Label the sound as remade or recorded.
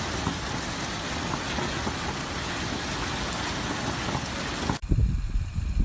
recorded